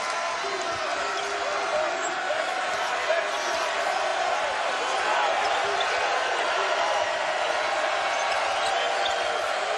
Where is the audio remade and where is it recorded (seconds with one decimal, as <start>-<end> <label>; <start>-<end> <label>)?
0.0-9.8 recorded